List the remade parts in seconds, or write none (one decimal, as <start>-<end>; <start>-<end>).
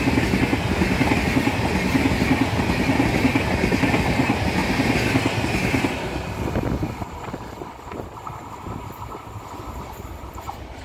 none